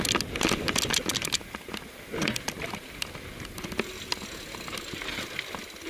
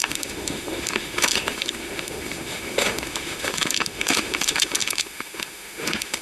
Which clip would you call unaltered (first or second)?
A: first